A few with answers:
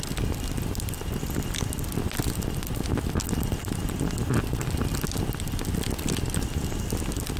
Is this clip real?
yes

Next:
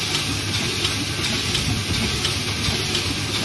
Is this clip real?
yes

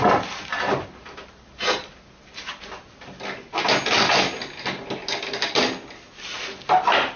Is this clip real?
yes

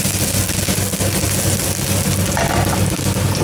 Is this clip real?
yes